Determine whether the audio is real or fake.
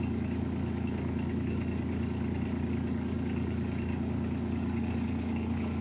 fake